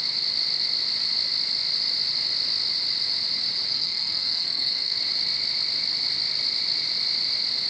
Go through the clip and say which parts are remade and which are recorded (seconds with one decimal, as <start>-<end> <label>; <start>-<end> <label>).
0.0-3.7 recorded; 3.7-5.0 remade; 5.0-7.7 recorded